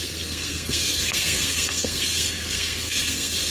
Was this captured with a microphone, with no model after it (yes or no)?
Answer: no